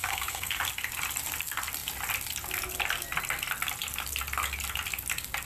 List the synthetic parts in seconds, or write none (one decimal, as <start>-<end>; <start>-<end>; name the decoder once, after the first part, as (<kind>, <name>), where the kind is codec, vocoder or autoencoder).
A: 0.0-0.6 (codec, SNAC)